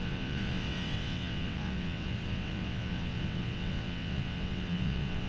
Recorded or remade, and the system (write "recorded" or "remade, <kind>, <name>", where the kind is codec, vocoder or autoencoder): remade, vocoder, WaveNeXt